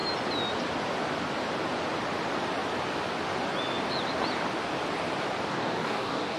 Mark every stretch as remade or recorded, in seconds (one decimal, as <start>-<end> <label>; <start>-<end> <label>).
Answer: 0.0-5.5 recorded; 5.5-6.4 remade